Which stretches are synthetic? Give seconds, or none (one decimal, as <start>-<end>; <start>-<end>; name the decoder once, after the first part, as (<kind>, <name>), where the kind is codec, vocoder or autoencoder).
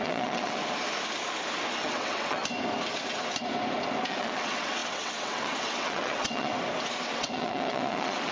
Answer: 0.0-0.6 (vocoder, WaveNeXt); 1.8-2.4; 4.0-6.5; 7.1-8.3